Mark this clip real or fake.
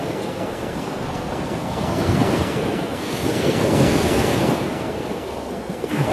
fake